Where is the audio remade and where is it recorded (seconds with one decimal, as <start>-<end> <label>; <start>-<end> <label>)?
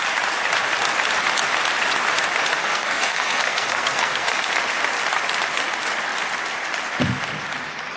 0.0-2.6 recorded; 2.6-4.5 remade; 4.5-8.0 recorded